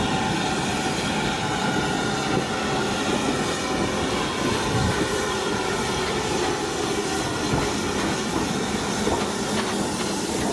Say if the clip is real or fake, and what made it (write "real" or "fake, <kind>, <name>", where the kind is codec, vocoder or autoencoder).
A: real